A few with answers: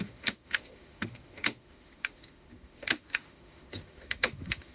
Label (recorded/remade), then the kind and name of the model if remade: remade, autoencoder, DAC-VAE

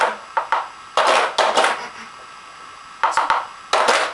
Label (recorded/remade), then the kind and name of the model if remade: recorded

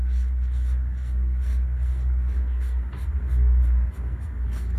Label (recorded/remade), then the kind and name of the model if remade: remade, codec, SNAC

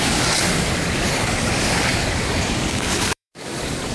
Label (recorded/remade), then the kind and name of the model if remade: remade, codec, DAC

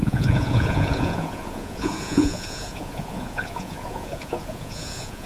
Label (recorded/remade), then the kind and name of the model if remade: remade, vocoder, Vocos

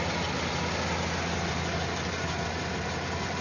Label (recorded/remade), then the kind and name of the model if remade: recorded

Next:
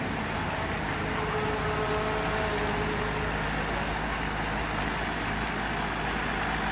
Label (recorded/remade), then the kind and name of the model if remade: recorded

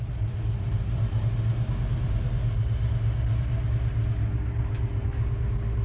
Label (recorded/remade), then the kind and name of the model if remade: recorded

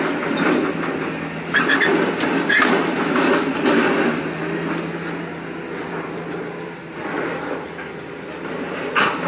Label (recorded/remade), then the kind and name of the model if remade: recorded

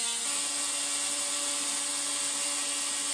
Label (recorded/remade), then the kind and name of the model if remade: recorded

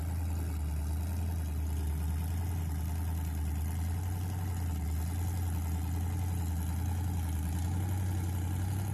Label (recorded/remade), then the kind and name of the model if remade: recorded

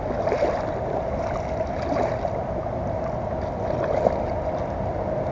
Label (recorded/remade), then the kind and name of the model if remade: recorded